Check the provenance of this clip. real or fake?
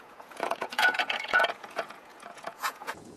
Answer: fake